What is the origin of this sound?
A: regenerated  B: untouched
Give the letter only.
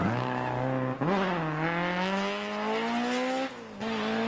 B